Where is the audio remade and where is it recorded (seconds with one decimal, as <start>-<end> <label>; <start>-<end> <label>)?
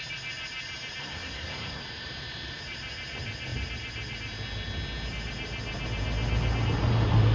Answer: 0.0-1.0 recorded; 1.0-1.8 remade; 1.8-7.3 recorded